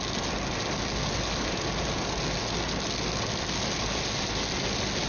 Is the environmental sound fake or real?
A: real